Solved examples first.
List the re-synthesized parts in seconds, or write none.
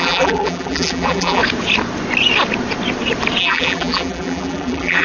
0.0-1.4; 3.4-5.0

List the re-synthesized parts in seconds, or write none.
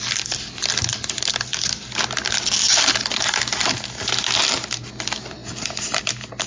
4.4-4.9; 5.4-6.0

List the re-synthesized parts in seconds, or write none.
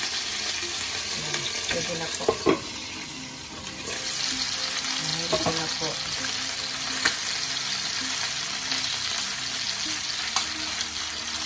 none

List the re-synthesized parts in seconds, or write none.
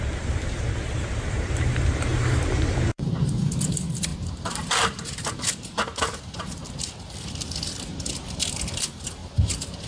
0.0-6.6; 8.7-9.2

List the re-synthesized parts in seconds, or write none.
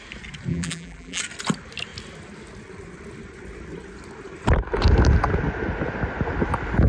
0.5-1.2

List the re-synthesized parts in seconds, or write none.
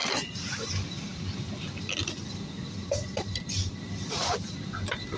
2.8-3.4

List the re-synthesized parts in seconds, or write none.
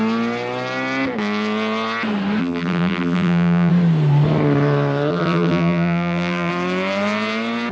2.4-3.7; 5.1-6.5